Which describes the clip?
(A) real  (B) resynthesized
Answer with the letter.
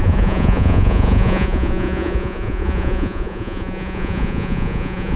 B